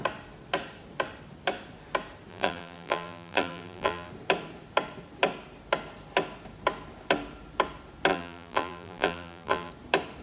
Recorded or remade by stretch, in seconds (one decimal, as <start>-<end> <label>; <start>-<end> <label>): 0.0-2.3 recorded; 2.3-4.1 remade; 4.1-8.1 recorded; 8.1-9.7 remade; 9.7-10.2 recorded